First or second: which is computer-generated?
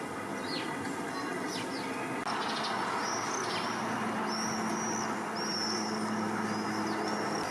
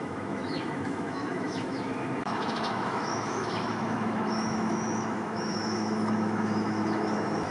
second